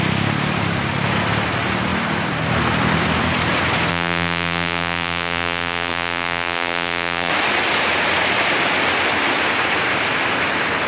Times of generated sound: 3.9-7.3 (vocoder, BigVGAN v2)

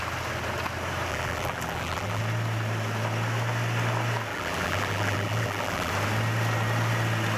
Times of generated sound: 1.1-2.2 (vocoder, BigVGAN v2); 4.3-5.9

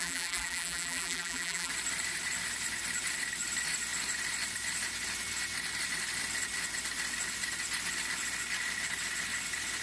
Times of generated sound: 0.0-1.7 (vocoder, BigVGAN v2)

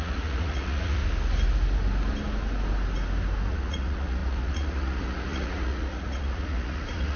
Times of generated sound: 0.0-1.0 (vocoder, Vocos); 3.5-7.2

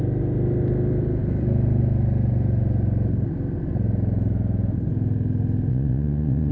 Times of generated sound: 5.7-6.5 (vocoder, Vocos)

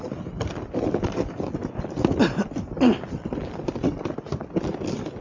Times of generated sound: none